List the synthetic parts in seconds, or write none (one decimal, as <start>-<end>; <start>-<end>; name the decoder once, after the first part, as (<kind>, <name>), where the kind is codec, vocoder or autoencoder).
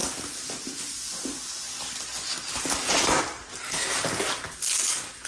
none